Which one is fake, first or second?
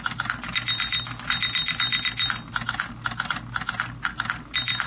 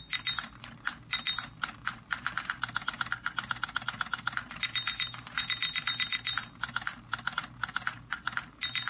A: second